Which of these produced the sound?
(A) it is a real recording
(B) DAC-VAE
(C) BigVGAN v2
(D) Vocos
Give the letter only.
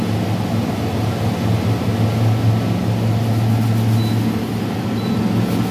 A